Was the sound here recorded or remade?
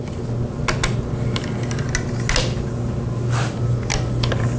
recorded